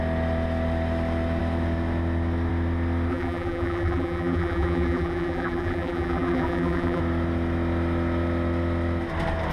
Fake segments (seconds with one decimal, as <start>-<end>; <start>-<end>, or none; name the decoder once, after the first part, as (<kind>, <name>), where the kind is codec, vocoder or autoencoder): 3.1-7.0 (vocoder, BigVGAN v2)